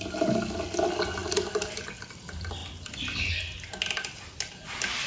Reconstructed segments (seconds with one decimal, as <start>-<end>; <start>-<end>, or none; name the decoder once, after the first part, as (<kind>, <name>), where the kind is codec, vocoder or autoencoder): none